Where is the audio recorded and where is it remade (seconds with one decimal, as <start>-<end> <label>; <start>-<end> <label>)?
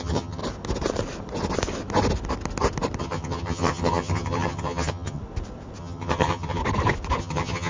0.0-0.4 remade; 0.4-3.0 recorded; 3.0-5.2 remade; 5.2-5.8 recorded; 5.8-6.6 remade; 6.6-7.2 recorded; 7.2-7.7 remade